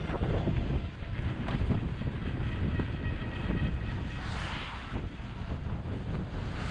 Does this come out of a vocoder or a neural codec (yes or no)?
no